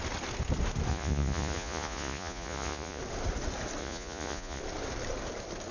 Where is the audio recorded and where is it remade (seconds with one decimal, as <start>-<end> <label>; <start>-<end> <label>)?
0.0-0.9 recorded; 0.9-3.0 remade; 3.0-3.8 recorded; 3.8-4.6 remade; 4.6-5.7 recorded